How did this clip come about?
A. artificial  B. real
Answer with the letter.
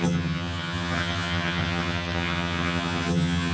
A